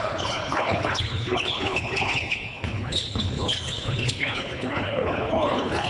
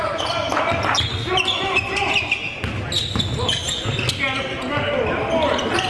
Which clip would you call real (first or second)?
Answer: second